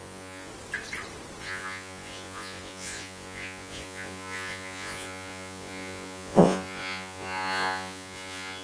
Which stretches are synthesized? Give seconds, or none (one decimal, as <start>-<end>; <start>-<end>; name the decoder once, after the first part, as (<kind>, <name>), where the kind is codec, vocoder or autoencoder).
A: 0.0-0.5 (vocoder, Vocos); 1.4-8.6